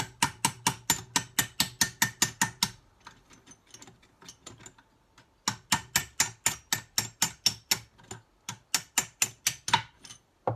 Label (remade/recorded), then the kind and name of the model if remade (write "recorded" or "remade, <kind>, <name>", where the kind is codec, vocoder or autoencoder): recorded